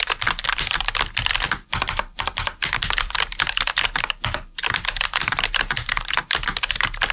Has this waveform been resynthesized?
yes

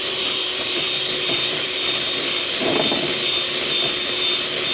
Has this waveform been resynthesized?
yes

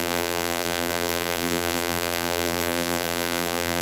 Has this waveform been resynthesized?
yes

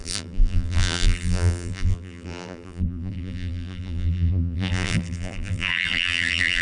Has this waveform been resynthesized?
yes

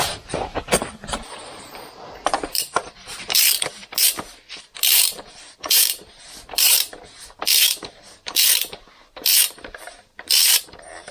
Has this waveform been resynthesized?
yes